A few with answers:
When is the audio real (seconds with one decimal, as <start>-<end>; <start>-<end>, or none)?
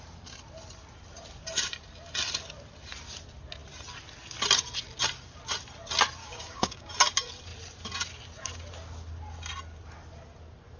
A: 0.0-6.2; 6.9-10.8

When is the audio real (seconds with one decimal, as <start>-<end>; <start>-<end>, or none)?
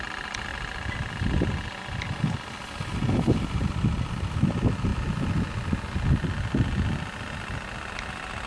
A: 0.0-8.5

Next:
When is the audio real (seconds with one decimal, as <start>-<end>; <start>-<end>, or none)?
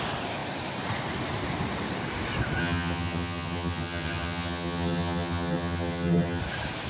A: 0.0-2.6; 6.4-6.9